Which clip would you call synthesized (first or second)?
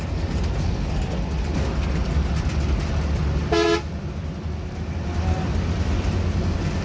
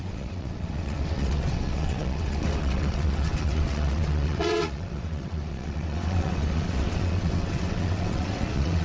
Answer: second